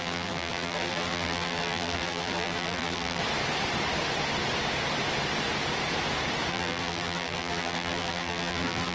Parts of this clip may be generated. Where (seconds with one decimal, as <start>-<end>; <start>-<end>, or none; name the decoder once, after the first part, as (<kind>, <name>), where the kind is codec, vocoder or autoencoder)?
0.0-3.2 (vocoder, BigVGAN v2); 6.5-8.9